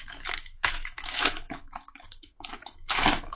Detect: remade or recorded remade